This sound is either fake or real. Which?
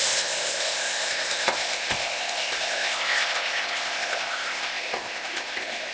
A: fake